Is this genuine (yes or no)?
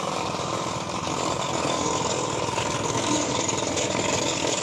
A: no